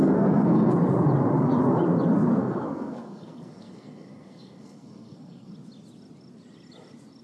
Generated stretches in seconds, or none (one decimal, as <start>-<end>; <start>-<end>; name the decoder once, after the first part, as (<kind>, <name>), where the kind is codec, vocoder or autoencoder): 0.0-0.7 (codec, SNAC); 2.4-5.5